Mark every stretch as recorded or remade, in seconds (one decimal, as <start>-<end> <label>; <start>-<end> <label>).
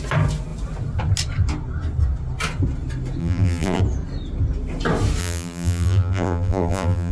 0.0-3.2 recorded; 3.2-3.8 remade; 3.8-5.2 recorded; 5.2-7.1 remade